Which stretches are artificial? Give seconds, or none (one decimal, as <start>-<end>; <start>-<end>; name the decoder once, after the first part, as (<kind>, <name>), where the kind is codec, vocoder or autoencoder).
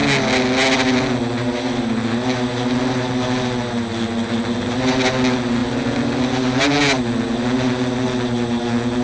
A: none